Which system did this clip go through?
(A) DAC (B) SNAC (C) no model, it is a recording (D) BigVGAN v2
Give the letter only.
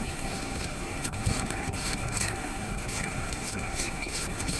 B